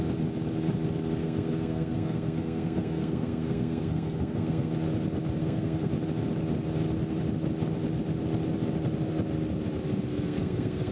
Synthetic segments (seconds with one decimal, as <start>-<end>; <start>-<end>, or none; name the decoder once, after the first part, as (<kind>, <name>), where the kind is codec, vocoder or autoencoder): 1.2-4.7 (codec, SNAC); 5.4-5.9; 10.1-10.9